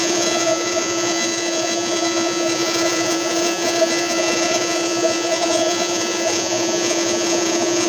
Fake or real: fake